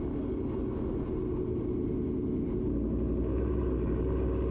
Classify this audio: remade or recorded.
recorded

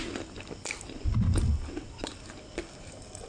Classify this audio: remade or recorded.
recorded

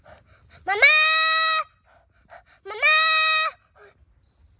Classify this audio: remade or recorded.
recorded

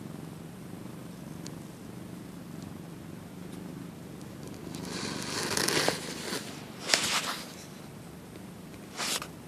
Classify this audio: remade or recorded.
recorded